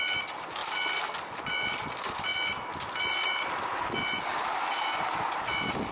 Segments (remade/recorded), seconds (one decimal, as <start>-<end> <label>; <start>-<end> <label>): 0.0-5.9 recorded